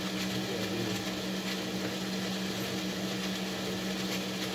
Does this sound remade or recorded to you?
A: recorded